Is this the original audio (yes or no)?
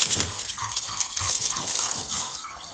no